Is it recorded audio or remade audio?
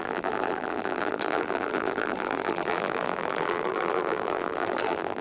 remade